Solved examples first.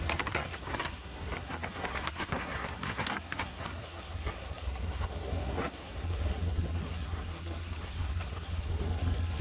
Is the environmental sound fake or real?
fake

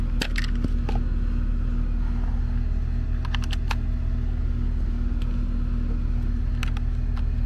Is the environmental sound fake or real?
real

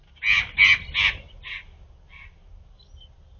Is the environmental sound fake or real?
real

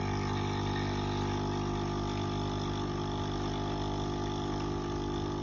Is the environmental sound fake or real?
real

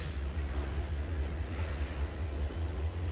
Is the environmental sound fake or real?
fake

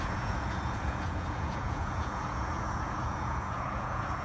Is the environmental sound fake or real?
fake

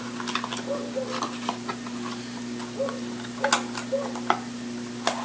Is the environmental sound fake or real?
real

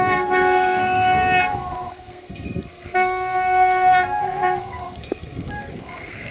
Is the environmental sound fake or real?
fake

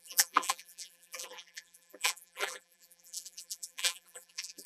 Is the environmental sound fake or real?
fake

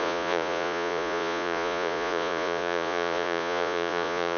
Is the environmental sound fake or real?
fake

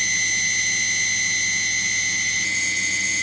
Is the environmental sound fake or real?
real